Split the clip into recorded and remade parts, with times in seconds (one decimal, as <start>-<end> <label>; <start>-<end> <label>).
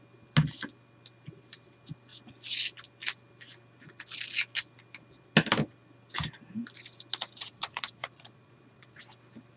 0.0-7.4 recorded; 7.4-9.0 remade; 9.0-9.6 recorded